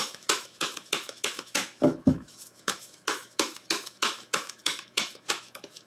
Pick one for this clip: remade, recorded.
remade